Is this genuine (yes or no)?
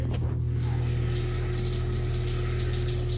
yes